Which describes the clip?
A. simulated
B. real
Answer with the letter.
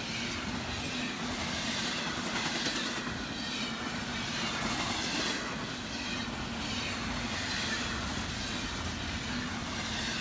B